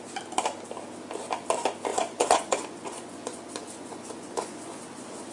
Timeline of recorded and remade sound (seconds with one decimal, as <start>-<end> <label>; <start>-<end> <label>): 0.0-1.9 recorded; 1.9-5.3 remade